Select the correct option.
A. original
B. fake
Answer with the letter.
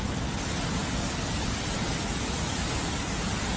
A